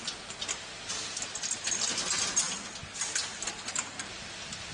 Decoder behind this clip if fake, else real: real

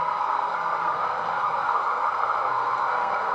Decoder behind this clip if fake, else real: fake, codec, SNAC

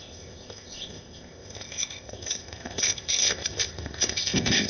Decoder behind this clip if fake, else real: fake, codec, ZipCodec